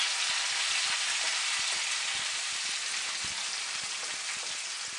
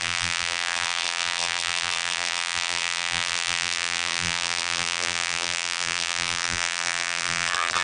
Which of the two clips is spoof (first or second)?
second